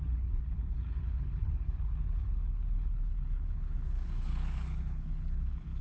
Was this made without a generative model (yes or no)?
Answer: no